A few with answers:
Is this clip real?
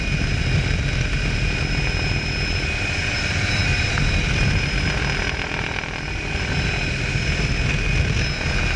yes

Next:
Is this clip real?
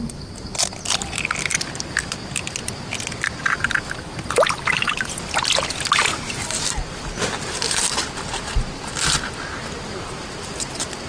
yes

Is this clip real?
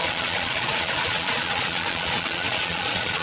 no